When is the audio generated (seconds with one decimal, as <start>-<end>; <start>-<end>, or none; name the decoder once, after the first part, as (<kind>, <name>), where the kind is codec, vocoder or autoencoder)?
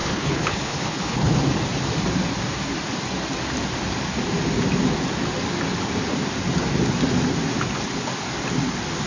0.0-1.4 (codec, HILCodec)